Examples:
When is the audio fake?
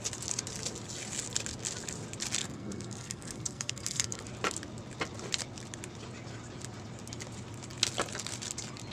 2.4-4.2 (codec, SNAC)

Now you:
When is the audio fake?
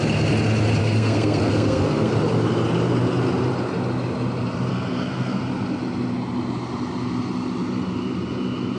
0.8-2.1 (codec, SNAC); 4.7-5.4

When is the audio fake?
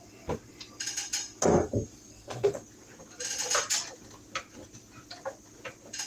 2.1-2.6 (codec, SNAC)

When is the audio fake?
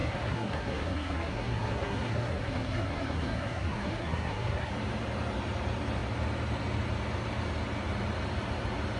0.0-4.7 (codec, SNAC)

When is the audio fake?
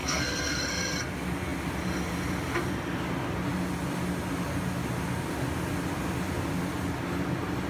0.0-0.6 (codec, SNAC)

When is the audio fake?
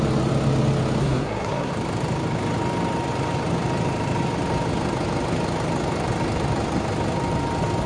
1.0-1.7 (codec, SNAC)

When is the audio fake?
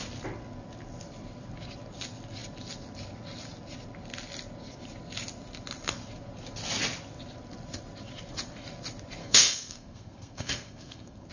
9.2-11.3 (codec, SNAC)